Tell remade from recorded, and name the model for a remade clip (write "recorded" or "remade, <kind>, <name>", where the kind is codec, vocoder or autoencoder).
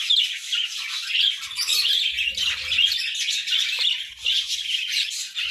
recorded